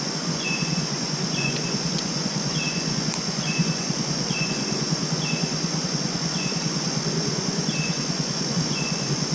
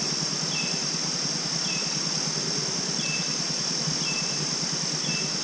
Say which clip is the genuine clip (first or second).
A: second